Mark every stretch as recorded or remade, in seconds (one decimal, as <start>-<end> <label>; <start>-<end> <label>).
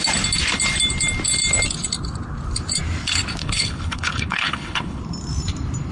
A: 0.0-3.4 recorded; 3.4-5.0 remade; 5.0-5.9 recorded